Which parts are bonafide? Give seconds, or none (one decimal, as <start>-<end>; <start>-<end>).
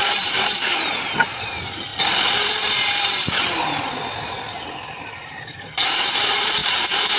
1.9-5.1; 6.6-7.2